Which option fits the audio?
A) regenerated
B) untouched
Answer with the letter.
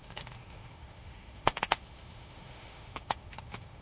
A